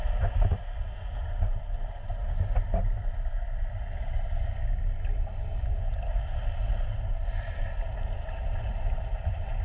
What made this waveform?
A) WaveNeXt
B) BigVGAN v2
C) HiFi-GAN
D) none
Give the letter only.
D